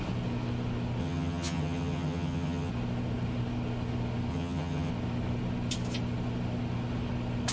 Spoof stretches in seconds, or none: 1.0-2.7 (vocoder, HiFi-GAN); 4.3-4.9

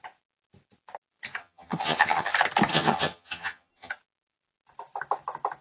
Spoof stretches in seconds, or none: 1.4-2.3 (vocoder, HiFi-GAN); 2.7-3.9

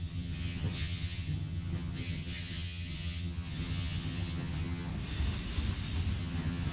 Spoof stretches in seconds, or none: 0.0-4.9 (vocoder, HiFi-GAN); 6.2-6.7

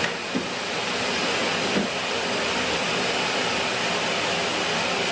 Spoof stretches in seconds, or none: none